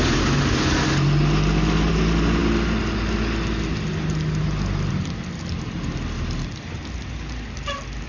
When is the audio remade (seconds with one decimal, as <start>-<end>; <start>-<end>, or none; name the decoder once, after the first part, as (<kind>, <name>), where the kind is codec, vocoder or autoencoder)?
none